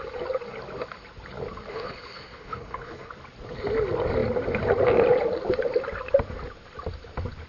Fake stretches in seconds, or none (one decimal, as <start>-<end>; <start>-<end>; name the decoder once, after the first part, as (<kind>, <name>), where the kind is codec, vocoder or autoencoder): 1.7-3.1 (codec, HILCodec)